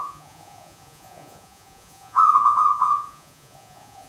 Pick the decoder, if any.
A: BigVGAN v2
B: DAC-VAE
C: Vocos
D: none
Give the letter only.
C